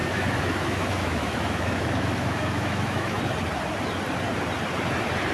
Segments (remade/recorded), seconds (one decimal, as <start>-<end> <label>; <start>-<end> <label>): 0.0-3.2 remade; 3.2-5.3 recorded

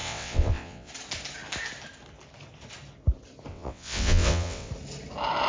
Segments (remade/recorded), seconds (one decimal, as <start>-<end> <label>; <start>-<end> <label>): 0.0-0.9 remade; 0.9-3.5 recorded; 3.5-4.7 remade; 4.7-5.5 recorded